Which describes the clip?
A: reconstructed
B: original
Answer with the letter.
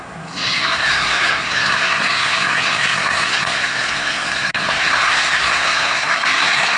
A